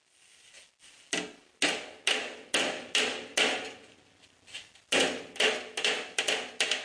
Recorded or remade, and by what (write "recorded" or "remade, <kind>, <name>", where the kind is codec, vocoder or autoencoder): recorded